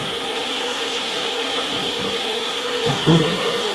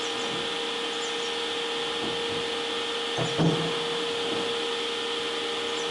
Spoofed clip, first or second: first